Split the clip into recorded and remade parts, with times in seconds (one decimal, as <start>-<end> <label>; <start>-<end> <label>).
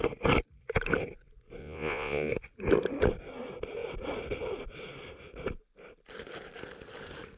0.0-1.6 recorded; 1.6-2.3 remade; 2.3-7.4 recorded